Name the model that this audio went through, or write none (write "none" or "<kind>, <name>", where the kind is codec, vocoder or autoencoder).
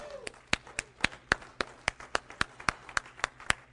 none